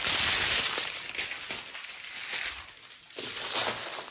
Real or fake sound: real